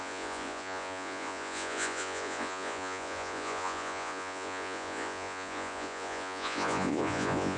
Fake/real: fake